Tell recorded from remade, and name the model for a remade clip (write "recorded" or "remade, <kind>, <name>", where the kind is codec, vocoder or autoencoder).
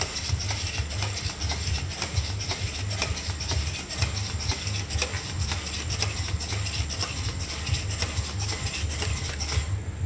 recorded